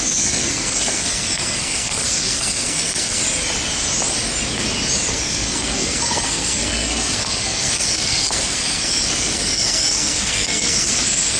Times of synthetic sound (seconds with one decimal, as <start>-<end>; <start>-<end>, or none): 0.0-3.2; 5.1-11.4